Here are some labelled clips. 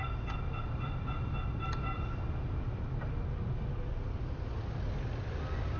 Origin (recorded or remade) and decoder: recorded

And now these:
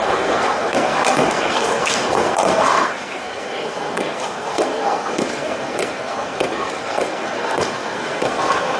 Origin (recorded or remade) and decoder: remade, codec, SNAC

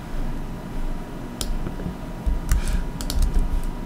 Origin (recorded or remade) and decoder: recorded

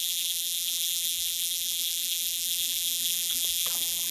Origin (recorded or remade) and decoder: remade, vocoder, BigVGAN v2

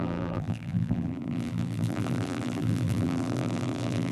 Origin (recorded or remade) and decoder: remade, vocoder, BigVGAN v2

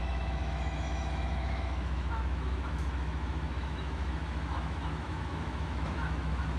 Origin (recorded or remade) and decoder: remade, autoencoder, DAC-VAE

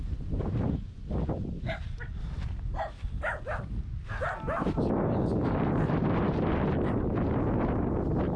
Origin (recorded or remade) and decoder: recorded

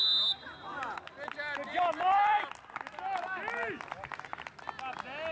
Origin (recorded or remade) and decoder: recorded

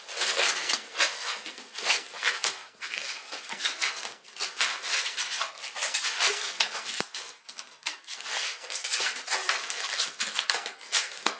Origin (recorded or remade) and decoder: remade, codec, SNAC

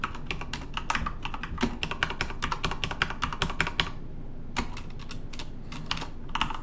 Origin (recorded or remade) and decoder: recorded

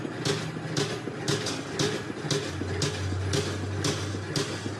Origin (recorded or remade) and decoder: recorded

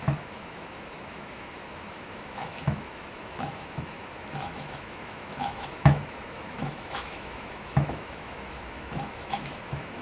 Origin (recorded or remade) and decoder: remade, autoencoder, DAC-VAE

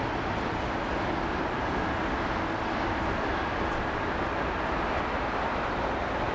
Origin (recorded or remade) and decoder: recorded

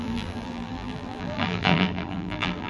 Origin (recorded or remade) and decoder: remade, vocoder, BigVGAN v2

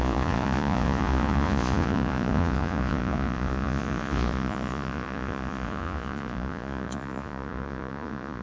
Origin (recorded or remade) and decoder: remade, vocoder, Vocos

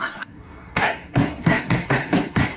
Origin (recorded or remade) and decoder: remade, codec, SNAC